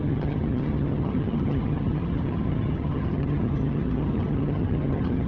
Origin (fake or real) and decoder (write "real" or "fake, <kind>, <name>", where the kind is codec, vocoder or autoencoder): fake, vocoder, HiFi-GAN